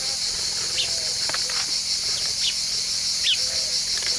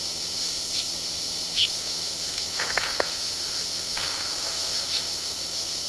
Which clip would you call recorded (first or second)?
first